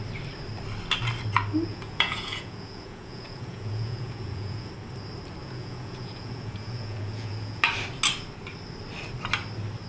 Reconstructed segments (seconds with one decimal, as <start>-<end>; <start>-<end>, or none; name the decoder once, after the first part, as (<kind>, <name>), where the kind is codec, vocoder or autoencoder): 1.7-4.7 (vocoder, Vocos); 5.4-7.6